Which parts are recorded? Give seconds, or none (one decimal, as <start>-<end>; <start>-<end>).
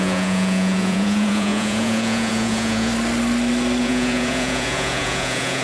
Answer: 2.9-3.8